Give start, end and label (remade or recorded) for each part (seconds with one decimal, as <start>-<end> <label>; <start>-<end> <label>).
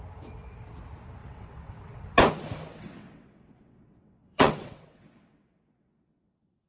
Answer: 0.0-1.2 recorded; 1.2-2.0 remade; 2.0-2.7 recorded; 2.7-6.7 remade